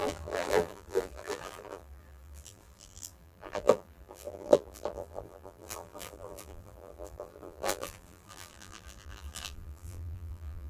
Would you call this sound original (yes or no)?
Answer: no